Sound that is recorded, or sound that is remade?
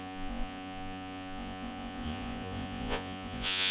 remade